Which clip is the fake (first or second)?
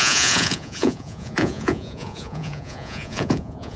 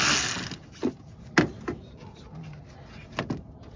first